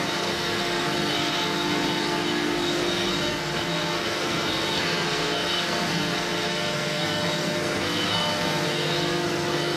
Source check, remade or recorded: remade